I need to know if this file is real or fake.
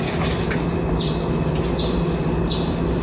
real